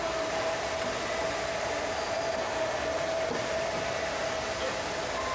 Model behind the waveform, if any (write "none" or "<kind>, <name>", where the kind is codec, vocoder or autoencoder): none